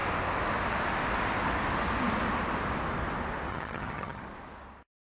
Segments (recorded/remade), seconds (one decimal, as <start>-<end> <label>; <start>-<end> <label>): 0.0-3.5 recorded; 3.5-4.2 remade; 4.2-5.1 recorded